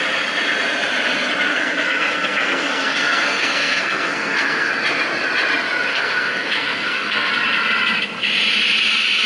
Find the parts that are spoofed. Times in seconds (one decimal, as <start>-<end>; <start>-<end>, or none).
1.5-4.7; 5.9-7.3